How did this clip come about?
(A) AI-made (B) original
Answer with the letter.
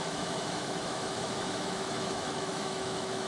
A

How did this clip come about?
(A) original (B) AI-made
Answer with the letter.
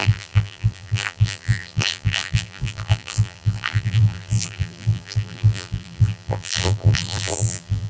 B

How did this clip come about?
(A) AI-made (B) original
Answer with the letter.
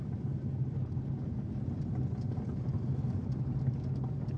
B